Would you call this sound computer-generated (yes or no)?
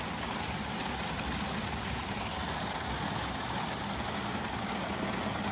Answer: no